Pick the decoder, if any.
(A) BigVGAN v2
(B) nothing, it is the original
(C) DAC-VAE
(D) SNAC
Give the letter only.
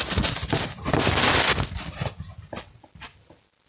B